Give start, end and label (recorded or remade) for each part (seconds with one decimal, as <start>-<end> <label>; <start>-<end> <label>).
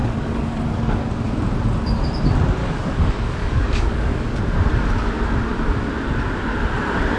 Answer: 0.0-1.1 remade; 1.1-2.6 recorded; 2.6-4.4 remade; 4.4-7.2 recorded